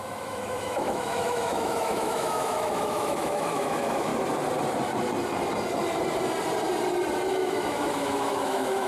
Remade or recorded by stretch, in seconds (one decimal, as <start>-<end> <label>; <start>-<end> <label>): 0.0-4.1 remade; 4.1-7.3 recorded; 7.3-8.9 remade